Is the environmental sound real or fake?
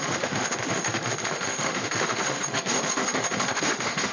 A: fake